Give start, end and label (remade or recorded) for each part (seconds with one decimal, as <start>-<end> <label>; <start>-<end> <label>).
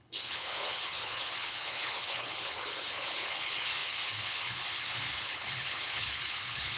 0.0-6.8 remade